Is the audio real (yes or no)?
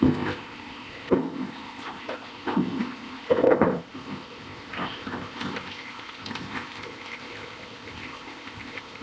no